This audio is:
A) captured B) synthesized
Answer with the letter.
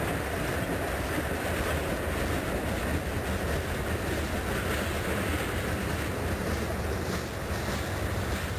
A